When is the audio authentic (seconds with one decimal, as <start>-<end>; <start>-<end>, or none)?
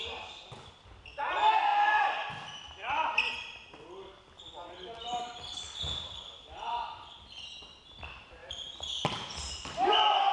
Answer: 0.0-1.7; 2.3-8.4; 9.9-10.3